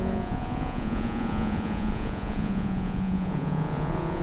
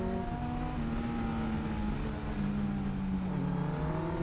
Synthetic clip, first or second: first